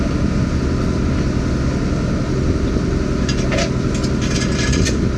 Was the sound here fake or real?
real